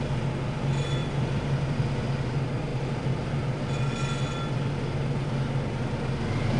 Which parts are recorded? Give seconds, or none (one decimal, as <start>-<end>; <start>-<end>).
0.0-1.0; 2.1-2.7; 3.6-6.6